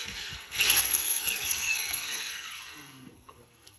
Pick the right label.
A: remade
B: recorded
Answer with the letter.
A